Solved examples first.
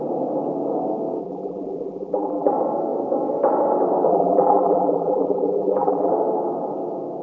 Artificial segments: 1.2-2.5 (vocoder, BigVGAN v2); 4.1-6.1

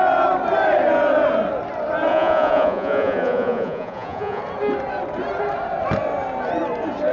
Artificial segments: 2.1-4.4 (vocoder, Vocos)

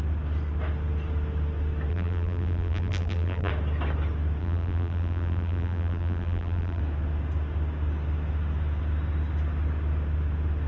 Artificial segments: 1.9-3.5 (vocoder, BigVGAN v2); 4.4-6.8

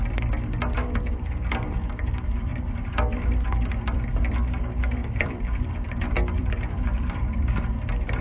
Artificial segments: 2.5-4.1 (vocoder, BigVGAN v2); 5.0-7.7

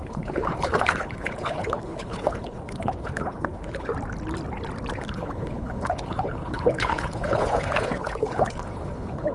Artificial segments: 0.0-3.9 (codec, HILCodec); 4.9-9.3